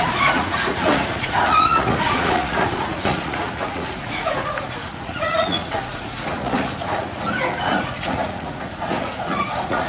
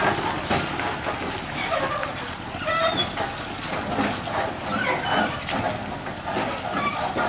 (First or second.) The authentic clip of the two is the second